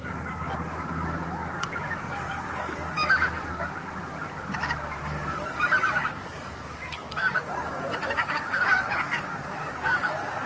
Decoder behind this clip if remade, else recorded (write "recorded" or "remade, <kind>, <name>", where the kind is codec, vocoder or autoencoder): remade, codec, DAC